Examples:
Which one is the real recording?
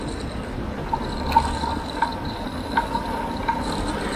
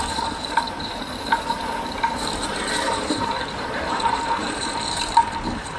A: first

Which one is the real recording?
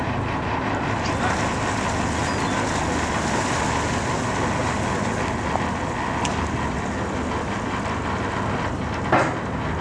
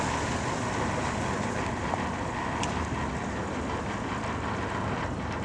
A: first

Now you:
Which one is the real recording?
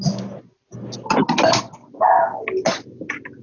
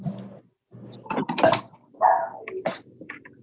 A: first